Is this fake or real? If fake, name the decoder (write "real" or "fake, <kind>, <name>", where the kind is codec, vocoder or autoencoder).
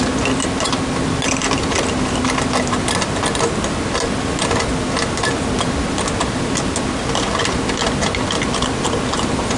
real